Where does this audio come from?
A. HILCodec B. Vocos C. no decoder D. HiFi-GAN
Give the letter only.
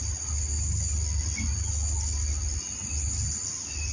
C